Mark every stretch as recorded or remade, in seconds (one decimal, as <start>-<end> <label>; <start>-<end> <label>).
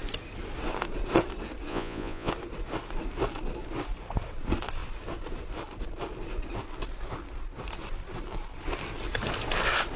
0.0-1.7 recorded; 1.7-2.3 remade; 2.3-10.0 recorded